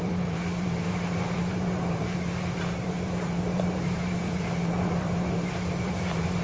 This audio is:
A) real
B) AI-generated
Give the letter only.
B